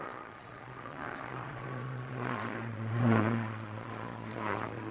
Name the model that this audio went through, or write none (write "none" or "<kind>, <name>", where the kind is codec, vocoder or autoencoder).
vocoder, Vocos